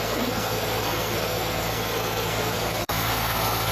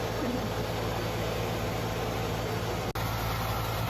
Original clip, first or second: second